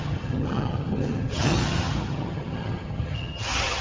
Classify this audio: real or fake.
fake